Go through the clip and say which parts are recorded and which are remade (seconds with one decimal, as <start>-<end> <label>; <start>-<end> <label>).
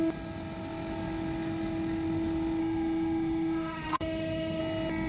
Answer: 0.0-2.6 recorded; 2.6-4.6 remade; 4.6-5.1 recorded